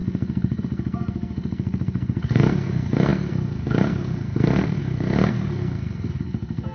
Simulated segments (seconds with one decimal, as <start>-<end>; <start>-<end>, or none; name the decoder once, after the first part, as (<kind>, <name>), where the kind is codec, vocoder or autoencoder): 0.0-6.7 (codec, SNAC)